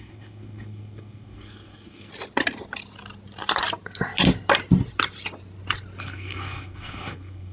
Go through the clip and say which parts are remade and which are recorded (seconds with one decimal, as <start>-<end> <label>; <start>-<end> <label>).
0.0-2.1 remade; 2.1-6.0 recorded; 6.0-7.5 remade